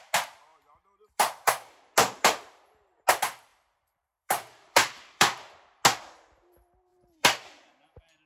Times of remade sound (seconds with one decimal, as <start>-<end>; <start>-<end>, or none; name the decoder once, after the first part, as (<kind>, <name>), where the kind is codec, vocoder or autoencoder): 0.5-1.8 (vocoder, BigVGAN v2); 3.5-5.5; 6.9-7.7